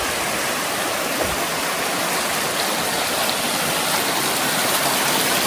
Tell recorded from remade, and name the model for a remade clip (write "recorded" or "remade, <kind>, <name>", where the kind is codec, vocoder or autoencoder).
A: recorded